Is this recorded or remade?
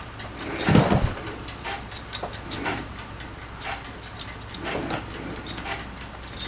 recorded